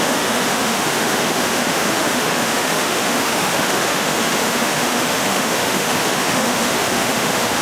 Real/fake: fake